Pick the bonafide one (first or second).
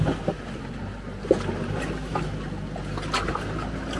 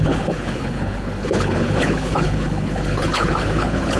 first